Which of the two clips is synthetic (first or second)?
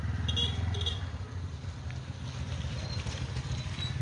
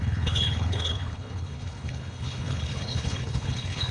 second